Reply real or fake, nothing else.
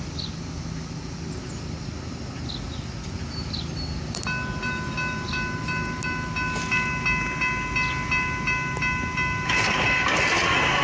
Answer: real